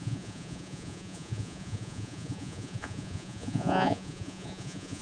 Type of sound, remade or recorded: remade